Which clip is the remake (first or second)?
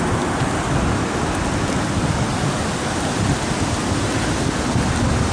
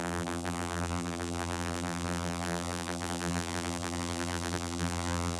second